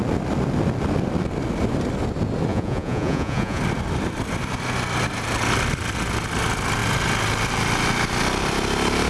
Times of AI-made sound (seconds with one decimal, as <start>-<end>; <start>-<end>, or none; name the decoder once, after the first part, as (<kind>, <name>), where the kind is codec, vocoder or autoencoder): 2.5-3.6 (vocoder, Vocos)